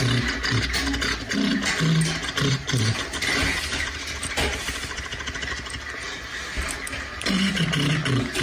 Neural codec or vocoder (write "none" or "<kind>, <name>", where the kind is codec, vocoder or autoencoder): none